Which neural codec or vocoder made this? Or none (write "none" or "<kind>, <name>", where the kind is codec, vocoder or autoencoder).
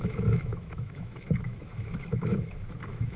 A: autoencoder, DAC-VAE